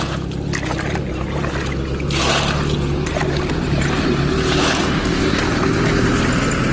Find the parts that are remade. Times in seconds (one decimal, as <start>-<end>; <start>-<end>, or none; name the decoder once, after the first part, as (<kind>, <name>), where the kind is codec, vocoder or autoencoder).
4.8-5.4 (codec, DAC)